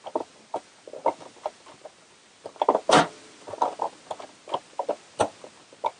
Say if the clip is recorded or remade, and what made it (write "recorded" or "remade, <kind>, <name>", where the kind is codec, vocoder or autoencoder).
recorded